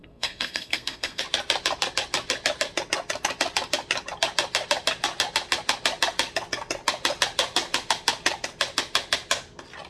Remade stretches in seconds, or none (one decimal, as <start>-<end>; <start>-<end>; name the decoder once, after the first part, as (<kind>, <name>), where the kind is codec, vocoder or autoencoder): 0.0-1.2 (codec, SNAC)